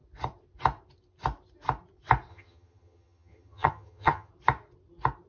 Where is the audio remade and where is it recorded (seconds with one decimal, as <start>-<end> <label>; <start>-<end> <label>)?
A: 0.0-2.3 recorded; 2.3-4.3 remade; 4.3-5.3 recorded